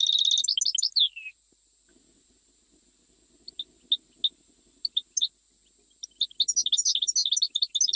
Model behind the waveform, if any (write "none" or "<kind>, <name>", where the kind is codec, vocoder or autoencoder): none